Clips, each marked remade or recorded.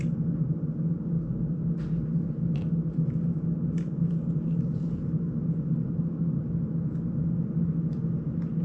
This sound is recorded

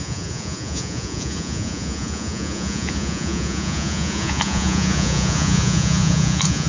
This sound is remade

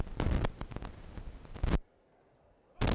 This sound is recorded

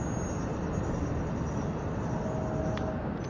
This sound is recorded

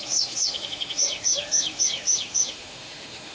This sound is remade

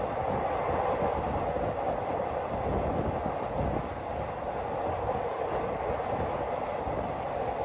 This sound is recorded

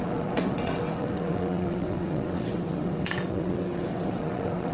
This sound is remade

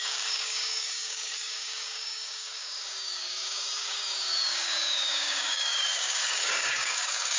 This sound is remade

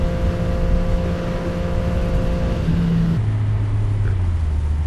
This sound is recorded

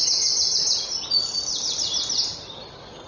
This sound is recorded